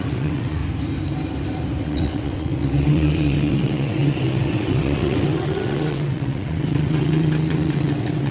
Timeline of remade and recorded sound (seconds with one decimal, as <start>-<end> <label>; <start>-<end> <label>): 0.0-0.6 remade; 0.6-1.8 recorded; 1.8-8.3 remade